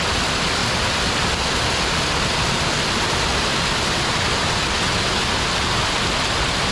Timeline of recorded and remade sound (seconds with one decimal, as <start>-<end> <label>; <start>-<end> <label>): 0.0-6.7 recorded